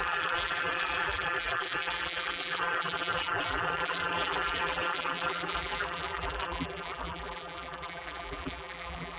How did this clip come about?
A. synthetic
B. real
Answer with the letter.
A